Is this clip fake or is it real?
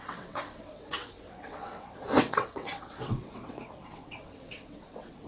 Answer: fake